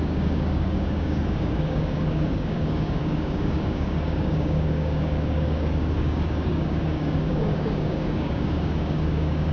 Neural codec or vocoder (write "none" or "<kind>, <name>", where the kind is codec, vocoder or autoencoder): codec, DAC